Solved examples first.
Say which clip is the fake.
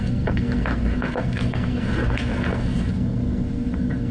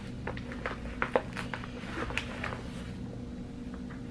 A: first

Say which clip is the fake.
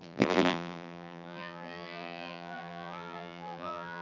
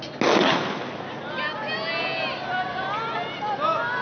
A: first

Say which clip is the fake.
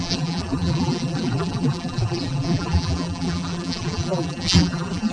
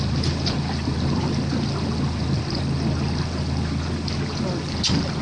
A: first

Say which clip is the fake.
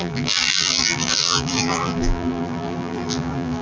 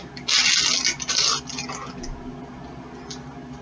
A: first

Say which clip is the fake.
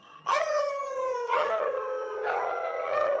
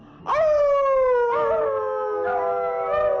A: first